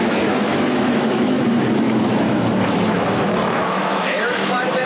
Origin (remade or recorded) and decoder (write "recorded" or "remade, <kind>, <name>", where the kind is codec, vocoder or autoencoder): remade, autoencoder, DAC-VAE